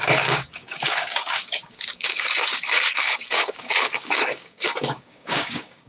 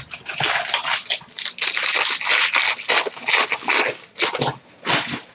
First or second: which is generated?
first